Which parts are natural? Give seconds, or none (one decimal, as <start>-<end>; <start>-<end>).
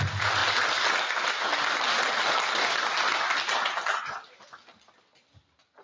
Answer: 0.0-5.8